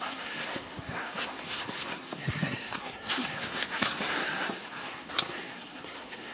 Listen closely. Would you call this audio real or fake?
fake